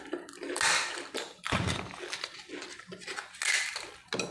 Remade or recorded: recorded